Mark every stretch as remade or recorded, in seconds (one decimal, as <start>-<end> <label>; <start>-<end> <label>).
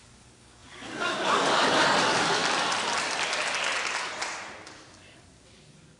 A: 0.0-2.4 remade; 2.4-4.9 recorded; 4.9-6.0 remade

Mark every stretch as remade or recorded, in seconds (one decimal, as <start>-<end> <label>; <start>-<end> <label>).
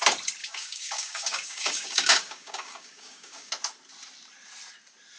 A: 0.0-0.4 recorded; 0.4-3.5 remade; 3.5-5.2 recorded